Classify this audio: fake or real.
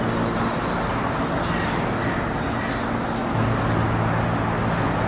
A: real